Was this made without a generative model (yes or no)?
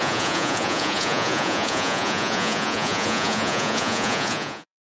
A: no